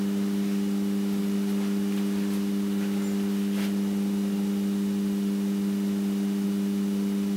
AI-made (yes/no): no